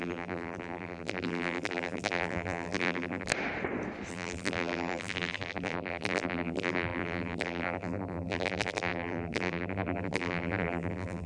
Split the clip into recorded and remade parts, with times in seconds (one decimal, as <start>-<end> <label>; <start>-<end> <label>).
0.0-3.3 remade; 3.3-4.1 recorded; 4.1-11.3 remade